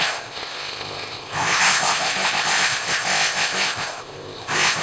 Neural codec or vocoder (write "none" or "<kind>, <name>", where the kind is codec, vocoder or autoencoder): codec, ZipCodec